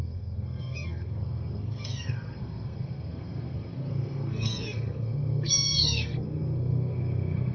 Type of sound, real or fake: fake